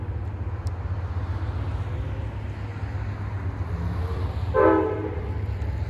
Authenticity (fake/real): real